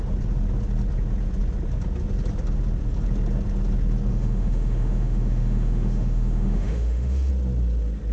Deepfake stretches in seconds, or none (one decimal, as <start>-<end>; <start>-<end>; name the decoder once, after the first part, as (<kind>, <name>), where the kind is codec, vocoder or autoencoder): 4.1-7.3 (autoencoder, DAC-VAE)